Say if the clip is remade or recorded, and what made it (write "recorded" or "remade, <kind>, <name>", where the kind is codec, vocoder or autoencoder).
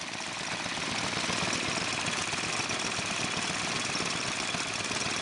recorded